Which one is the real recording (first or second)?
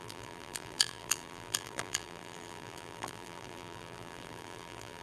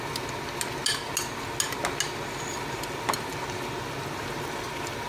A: second